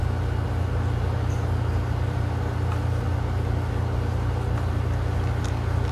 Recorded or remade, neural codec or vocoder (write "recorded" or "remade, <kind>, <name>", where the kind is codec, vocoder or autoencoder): recorded